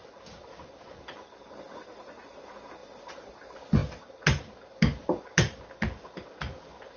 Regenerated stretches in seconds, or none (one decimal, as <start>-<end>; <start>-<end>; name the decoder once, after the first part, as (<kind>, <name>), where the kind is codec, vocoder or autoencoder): none